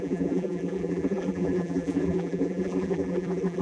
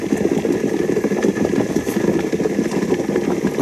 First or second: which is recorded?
second